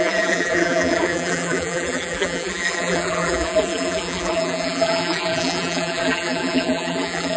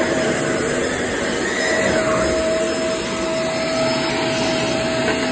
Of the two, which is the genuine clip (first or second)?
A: second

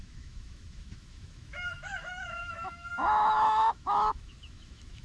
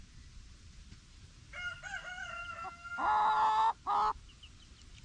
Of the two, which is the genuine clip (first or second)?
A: second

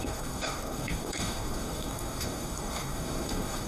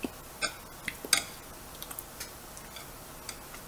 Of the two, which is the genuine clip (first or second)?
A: second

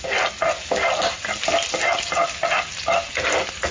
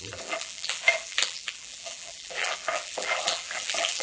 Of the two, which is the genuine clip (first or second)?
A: first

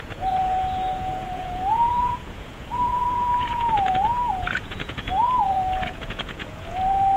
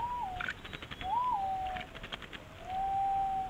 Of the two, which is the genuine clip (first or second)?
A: second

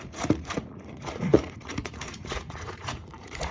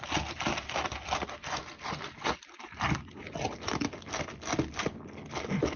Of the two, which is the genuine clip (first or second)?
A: second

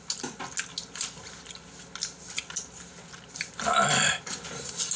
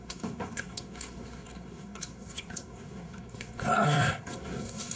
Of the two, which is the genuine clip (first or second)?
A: first